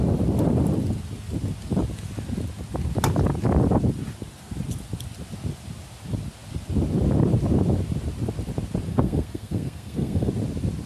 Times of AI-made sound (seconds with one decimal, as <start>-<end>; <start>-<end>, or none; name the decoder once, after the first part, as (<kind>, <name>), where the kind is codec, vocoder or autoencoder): 8.9-10.3 (codec, SNAC)